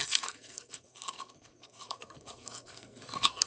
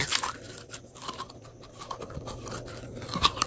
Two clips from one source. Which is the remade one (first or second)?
first